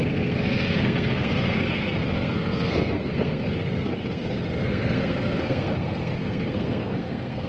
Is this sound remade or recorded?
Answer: remade